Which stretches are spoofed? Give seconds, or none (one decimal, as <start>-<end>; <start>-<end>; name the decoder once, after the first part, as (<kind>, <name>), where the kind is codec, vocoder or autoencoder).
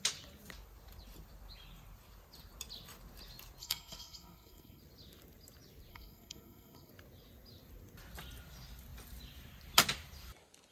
3.6-4.8 (codec, SNAC); 5.9-6.9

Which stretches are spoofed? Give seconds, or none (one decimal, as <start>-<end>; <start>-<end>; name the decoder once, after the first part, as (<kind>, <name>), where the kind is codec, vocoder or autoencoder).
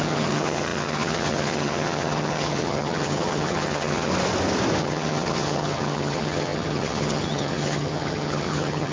0.0-4.1 (vocoder, HiFi-GAN); 4.8-8.9